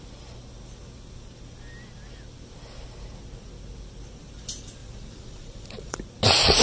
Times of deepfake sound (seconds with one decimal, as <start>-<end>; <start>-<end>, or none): 4.8-6.0